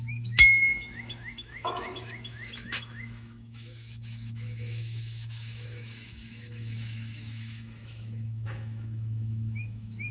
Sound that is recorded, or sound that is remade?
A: remade